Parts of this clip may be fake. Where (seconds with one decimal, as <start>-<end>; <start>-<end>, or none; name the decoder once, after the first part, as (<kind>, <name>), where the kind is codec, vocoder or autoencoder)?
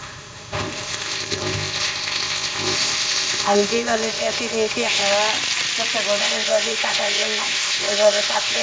0.0-5.0 (codec, ZipCodec); 6.2-8.6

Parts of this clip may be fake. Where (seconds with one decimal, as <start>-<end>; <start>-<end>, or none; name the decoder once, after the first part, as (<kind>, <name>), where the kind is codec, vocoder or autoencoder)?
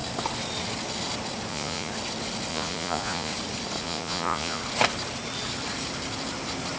1.5-1.9 (vocoder, Vocos); 2.5-3.3; 3.8-4.6